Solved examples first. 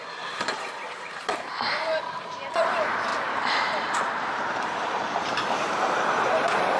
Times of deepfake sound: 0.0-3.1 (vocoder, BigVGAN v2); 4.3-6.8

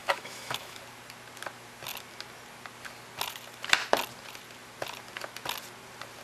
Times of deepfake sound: 0.0-0.8 (autoencoder, DAC-VAE)

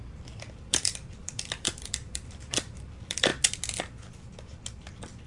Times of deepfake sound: 0.0-3.3 (vocoder, BigVGAN v2)

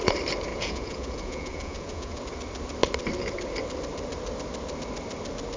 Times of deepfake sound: 0.5-2.2 (vocoder, Vocos)